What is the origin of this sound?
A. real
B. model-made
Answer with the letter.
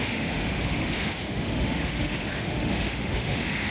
B